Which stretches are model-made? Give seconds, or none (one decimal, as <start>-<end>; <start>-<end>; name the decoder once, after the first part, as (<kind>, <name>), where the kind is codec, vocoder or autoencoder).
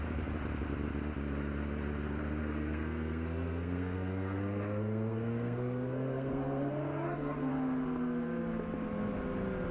2.4-7.5 (codec, SNAC)